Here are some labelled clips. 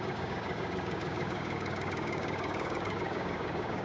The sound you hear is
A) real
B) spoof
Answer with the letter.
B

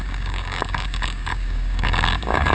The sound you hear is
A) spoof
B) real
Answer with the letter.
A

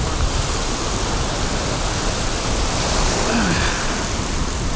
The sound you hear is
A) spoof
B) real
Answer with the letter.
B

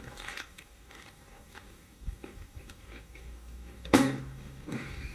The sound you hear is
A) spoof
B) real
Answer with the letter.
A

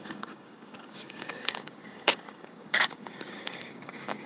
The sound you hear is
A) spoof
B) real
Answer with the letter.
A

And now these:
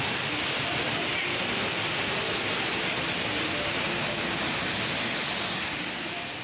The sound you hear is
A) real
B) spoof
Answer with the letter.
A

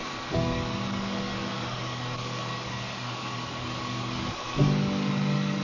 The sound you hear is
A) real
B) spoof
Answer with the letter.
B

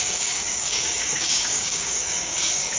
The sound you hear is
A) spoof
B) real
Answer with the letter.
A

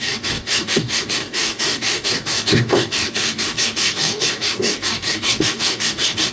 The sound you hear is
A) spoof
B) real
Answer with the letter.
A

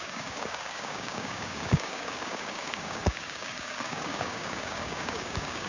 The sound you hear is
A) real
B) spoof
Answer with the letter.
B